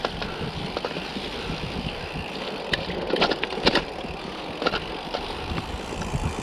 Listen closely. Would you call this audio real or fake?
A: real